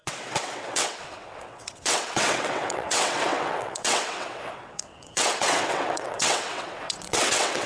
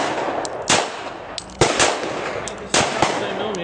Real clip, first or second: second